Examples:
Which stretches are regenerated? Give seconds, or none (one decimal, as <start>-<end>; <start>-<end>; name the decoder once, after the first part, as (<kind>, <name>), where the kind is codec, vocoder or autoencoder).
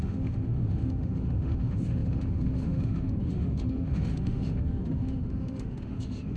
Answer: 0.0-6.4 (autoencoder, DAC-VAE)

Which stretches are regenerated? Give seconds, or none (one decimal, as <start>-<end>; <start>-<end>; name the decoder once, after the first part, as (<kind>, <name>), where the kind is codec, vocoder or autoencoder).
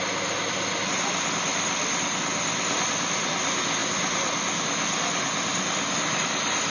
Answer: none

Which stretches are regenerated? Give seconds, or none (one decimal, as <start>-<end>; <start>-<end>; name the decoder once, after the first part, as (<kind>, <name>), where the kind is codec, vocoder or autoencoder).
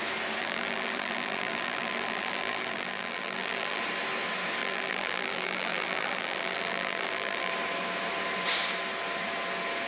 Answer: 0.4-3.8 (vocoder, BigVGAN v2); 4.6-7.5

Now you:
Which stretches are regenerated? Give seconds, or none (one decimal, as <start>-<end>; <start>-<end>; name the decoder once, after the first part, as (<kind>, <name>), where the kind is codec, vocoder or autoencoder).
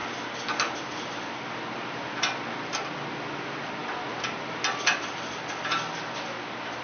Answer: none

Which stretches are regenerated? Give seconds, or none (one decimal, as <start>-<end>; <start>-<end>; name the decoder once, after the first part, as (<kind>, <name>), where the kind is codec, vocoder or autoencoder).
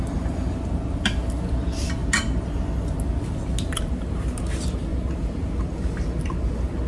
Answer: 4.9-5.6 (vocoder, BigVGAN v2)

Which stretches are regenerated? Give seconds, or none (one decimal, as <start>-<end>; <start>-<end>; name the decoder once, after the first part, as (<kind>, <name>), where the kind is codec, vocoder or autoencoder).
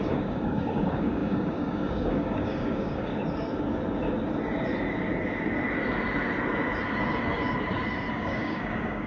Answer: 0.0-3.1 (codec, DAC); 8.1-9.1